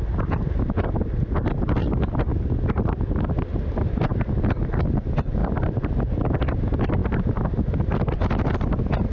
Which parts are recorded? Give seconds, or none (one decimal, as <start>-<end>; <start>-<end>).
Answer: 0.0-9.1